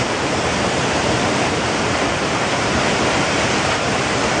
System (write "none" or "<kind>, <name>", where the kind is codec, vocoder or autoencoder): vocoder, BigVGAN v2